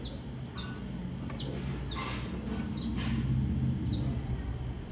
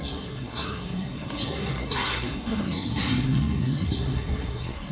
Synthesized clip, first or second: second